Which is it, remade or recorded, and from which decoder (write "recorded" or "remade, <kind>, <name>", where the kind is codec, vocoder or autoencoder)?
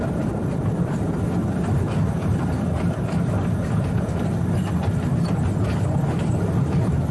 recorded